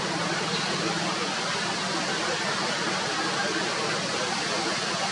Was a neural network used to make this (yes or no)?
no